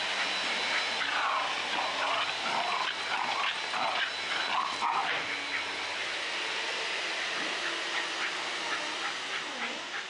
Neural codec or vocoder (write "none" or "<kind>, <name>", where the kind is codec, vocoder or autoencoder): none